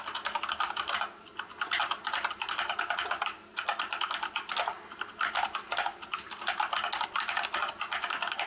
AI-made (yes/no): no